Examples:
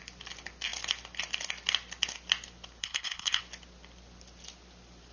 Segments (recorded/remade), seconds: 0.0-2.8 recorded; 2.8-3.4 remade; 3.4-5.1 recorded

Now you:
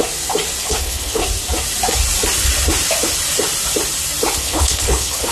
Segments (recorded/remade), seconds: 0.0-0.6 recorded; 0.6-1.2 remade; 1.2-4.4 recorded; 4.4-5.3 remade

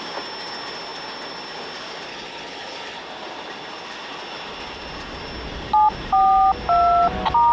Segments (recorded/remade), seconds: 0.0-2.1 recorded; 2.1-3.0 remade; 3.0-7.5 recorded

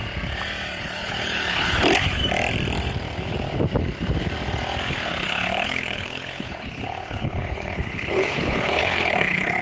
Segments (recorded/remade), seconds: 0.0-0.8 recorded; 0.8-2.2 remade; 2.2-5.2 recorded; 5.2-9.6 remade

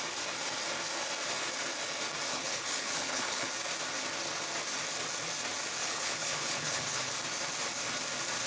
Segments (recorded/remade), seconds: 0.0-2.3 recorded; 2.3-3.5 remade; 3.5-5.8 recorded; 5.8-7.1 remade; 7.1-8.5 recorded